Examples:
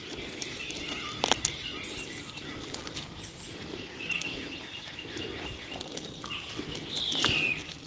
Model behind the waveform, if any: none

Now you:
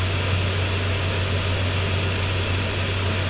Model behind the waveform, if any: none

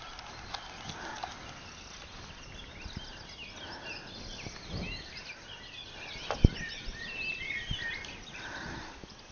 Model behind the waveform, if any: none